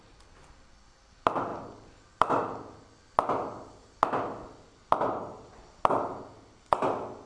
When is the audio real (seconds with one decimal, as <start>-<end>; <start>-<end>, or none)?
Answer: 0.0-7.3